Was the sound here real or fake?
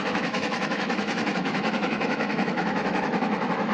fake